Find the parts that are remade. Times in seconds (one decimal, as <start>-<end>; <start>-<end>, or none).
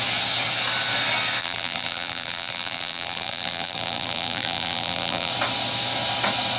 1.4-5.3